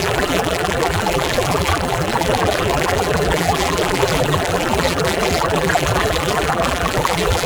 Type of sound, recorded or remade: remade